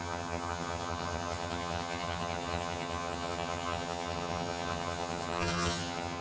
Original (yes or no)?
no